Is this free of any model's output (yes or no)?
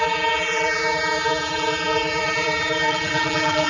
no